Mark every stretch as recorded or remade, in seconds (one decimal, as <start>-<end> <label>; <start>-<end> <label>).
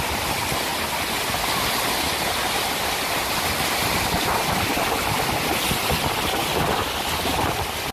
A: 0.0-7.9 recorded